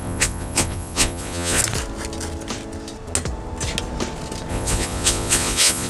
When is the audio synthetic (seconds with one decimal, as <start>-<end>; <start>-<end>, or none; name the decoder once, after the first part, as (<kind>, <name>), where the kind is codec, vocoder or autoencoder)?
0.0-1.6 (vocoder, Vocos); 4.5-5.9